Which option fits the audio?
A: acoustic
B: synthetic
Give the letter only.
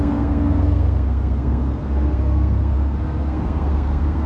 B